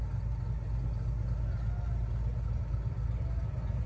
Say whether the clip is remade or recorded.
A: recorded